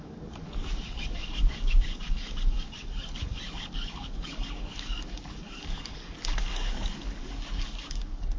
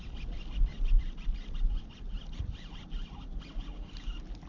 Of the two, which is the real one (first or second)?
second